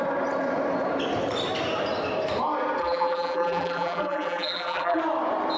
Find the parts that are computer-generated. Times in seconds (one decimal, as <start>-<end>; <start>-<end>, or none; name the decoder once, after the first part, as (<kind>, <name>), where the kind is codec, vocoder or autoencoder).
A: 2.8-5.0 (vocoder, BigVGAN v2)